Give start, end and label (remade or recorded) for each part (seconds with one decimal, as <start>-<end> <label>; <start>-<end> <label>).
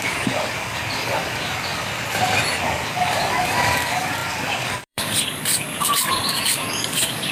0.0-1.9 remade; 1.9-2.6 recorded; 2.6-7.3 remade